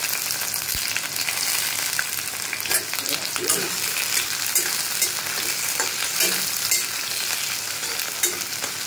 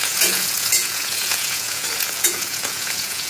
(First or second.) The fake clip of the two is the second